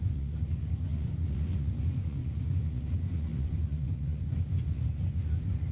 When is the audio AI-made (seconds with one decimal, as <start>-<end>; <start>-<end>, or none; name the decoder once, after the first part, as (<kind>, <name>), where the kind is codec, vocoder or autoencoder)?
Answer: 0.0-5.7 (vocoder, Vocos)